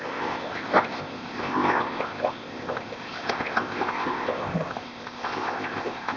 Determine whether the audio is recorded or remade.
remade